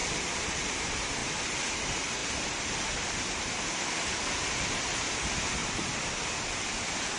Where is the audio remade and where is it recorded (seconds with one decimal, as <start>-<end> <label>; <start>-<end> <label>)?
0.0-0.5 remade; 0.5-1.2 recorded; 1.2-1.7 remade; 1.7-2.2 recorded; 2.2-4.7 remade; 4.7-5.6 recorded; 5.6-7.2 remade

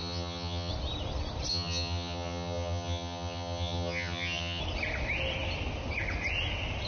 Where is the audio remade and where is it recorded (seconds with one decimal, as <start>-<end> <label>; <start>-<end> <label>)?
0.0-0.7 remade; 0.7-1.5 recorded; 1.5-4.6 remade; 4.6-6.9 recorded

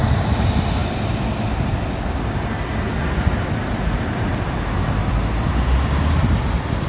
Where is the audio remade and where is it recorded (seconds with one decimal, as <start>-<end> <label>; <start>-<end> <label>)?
0.0-6.9 recorded

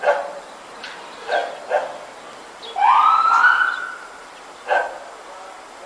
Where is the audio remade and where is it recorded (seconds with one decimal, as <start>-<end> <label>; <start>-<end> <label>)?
0.0-5.9 recorded

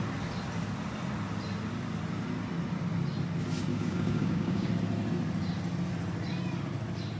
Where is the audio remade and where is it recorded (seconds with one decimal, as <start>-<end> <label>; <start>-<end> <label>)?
0.0-3.7 recorded; 3.7-4.7 remade; 4.7-7.2 recorded